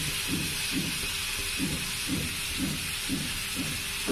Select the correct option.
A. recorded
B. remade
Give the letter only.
A